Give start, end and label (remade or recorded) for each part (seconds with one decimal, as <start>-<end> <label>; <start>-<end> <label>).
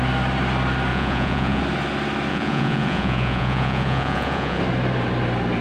0.0-0.9 recorded; 0.9-1.6 remade; 1.6-2.3 recorded; 2.3-4.6 remade; 4.6-5.6 recorded